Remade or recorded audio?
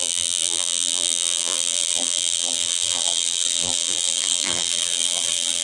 remade